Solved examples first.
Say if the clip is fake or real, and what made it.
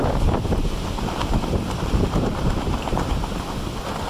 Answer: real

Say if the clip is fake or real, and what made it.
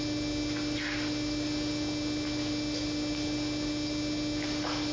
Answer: real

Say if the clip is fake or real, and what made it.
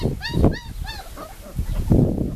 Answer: real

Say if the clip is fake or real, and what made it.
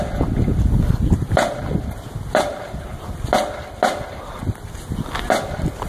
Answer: real